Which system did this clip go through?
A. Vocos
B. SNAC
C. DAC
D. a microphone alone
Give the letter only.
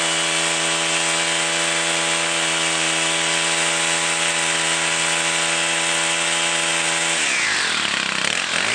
D